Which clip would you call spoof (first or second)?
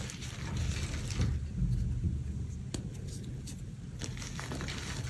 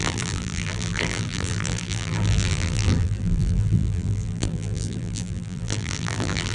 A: second